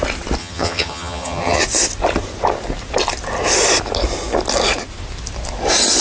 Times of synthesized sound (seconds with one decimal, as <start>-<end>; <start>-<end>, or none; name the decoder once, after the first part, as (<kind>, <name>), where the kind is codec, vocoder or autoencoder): 0.4-1.6 (vocoder, HiFi-GAN)

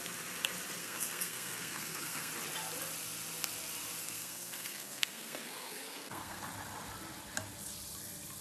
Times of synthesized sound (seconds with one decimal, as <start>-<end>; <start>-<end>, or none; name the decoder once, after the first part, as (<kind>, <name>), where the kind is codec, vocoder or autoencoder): 0.8-2.3 (codec, SNAC); 4.0-6.4

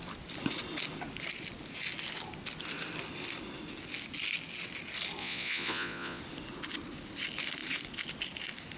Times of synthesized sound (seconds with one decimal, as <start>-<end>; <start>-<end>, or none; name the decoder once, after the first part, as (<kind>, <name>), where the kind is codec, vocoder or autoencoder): 5.2-6.2 (vocoder, Vocos)

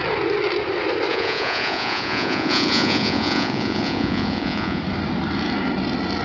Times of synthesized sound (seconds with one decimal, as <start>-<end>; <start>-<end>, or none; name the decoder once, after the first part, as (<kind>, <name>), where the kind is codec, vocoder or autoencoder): 1.1-4.8 (vocoder, Vocos)

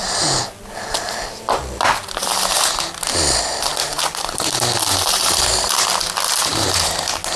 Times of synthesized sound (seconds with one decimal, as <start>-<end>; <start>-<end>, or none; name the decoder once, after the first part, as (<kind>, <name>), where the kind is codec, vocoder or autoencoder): none

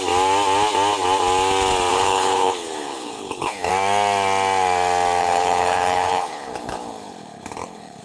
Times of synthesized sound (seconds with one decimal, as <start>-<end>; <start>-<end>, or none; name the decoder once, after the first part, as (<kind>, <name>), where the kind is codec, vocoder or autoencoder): 1.9-3.7 (codec, HILCodec); 5.2-8.0

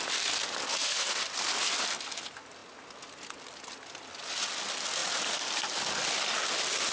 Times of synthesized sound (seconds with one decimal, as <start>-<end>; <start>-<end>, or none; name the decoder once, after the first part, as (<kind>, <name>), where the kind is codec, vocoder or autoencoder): 0.7-1.2 (codec, SNAC)